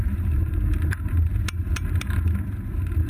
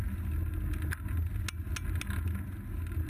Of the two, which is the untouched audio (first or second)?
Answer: second